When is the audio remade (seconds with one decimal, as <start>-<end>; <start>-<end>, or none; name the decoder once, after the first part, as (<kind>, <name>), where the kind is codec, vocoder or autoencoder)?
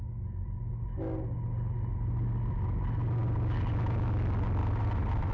4.6-5.3 (vocoder, BigVGAN v2)